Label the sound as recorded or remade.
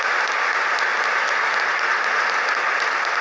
recorded